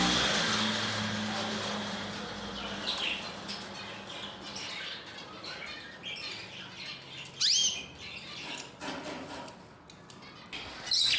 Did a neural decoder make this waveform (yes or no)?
no